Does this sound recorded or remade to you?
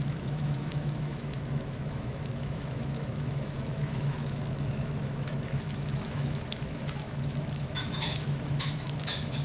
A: remade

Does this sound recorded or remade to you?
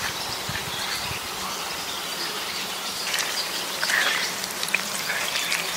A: remade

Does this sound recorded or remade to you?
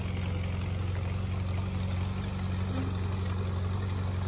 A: recorded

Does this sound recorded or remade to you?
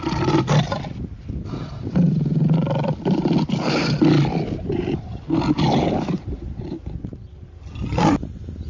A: recorded